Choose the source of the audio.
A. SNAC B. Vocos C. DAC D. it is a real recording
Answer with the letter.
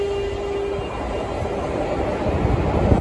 D